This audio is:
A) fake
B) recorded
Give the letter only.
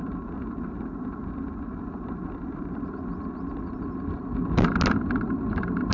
B